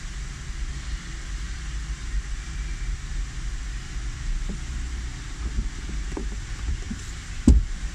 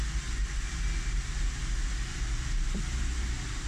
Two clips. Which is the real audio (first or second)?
second